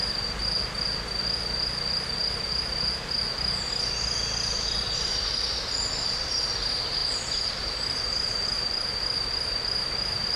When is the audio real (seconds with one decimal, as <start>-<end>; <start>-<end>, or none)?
0.4-4.8